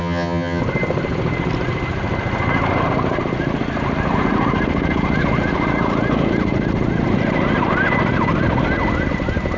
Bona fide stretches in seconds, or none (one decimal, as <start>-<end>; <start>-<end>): 0.6-9.6